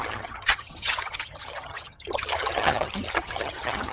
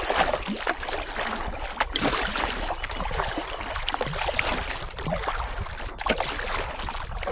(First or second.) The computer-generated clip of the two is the first